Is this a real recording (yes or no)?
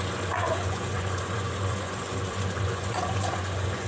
no